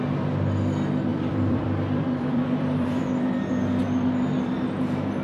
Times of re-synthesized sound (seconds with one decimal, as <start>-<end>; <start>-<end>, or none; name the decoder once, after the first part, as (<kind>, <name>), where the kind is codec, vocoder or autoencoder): 1.1-3.0 (vocoder, BigVGAN v2)